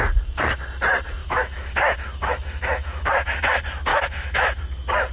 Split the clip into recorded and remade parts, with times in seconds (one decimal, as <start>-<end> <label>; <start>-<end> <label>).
0.0-1.2 recorded; 1.2-3.4 remade; 3.4-3.9 recorded; 3.9-4.6 remade; 4.6-5.1 recorded